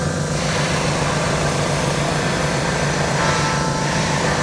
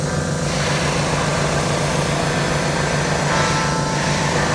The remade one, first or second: first